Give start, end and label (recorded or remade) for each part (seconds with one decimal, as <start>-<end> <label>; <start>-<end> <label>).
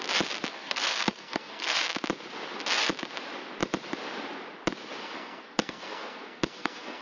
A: 0.0-0.5 recorded; 0.5-1.8 remade; 1.8-5.0 recorded; 5.0-7.0 remade